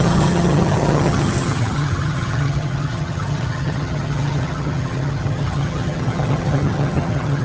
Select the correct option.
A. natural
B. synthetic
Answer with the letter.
B